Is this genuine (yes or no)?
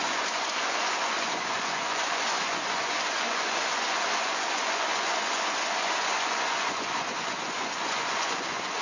no